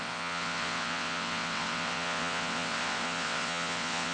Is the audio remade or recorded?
remade